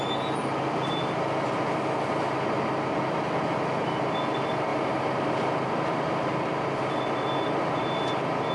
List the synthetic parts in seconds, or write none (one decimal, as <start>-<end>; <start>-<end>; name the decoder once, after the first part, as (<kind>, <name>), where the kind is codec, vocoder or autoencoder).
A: 4.7-8.1 (vocoder, BigVGAN v2)